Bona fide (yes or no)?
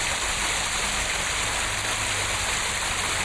yes